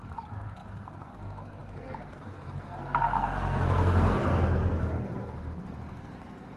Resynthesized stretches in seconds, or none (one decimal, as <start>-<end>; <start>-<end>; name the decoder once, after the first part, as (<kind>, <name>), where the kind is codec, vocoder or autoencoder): 0.0-6.6 (codec, SNAC)